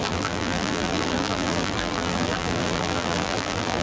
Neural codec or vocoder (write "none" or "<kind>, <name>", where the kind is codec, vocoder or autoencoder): vocoder, BigVGAN v2